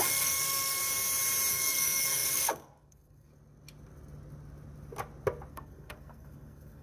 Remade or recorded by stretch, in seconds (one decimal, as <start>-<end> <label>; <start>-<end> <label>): 0.0-0.8 remade; 0.8-1.5 recorded; 1.5-3.3 remade; 3.3-5.5 recorded; 5.5-6.8 remade